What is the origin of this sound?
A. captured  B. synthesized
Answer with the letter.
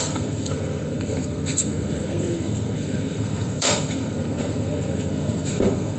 B